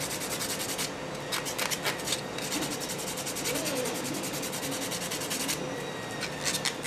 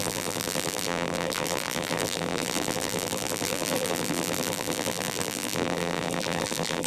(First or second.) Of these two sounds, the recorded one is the first